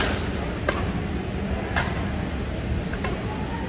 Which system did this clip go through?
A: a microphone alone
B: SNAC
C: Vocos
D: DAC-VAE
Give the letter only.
A